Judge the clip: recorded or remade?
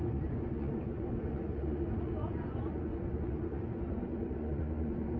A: remade